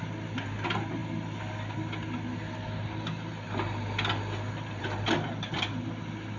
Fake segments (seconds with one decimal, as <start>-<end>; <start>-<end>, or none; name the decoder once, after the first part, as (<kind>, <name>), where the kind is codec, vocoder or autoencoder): none

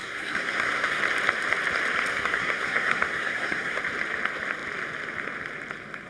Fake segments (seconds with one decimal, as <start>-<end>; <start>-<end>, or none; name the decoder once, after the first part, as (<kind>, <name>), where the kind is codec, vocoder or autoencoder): 0.0-1.0 (codec, SNAC); 2.1-3.8

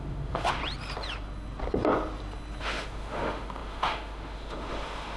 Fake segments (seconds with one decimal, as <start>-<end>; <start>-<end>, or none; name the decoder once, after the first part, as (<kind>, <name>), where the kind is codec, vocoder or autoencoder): 0.0-0.6 (autoencoder, DAC-VAE); 2.6-5.2

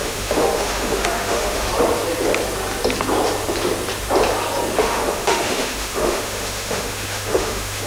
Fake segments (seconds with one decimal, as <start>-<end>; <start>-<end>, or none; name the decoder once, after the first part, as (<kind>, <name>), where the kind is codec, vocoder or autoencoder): 0.0-1.7 (autoencoder, DAC-VAE); 4.8-7.9

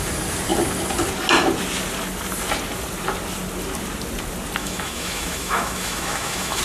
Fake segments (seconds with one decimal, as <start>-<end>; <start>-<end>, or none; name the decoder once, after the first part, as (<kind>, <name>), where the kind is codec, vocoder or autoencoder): 4.6-6.6 (autoencoder, DAC-VAE)

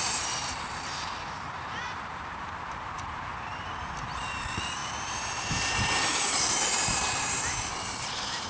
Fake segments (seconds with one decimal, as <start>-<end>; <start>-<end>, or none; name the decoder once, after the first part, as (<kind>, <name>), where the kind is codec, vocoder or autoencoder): 0.0-3.3 (vocoder, BigVGAN v2); 4.2-4.8; 5.4-8.5

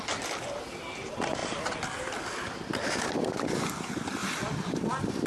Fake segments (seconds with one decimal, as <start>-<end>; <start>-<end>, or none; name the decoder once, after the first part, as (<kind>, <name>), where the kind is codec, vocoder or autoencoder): 1.4-2.9 (vocoder, BigVGAN v2); 4.2-5.3

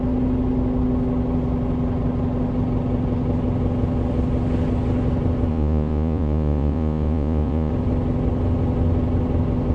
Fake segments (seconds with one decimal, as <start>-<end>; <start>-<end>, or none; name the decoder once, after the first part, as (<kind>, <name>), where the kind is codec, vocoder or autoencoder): 5.5-7.7 (vocoder, Vocos)